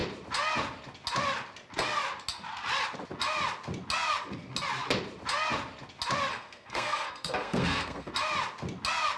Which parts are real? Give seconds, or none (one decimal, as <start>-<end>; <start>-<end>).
0.0-6.3; 8.1-9.2